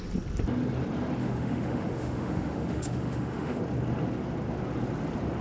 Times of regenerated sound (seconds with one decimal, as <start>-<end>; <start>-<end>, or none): 1.2-3.6